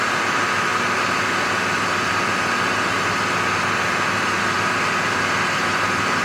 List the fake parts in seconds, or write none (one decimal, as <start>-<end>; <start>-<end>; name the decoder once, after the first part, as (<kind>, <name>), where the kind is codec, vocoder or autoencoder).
none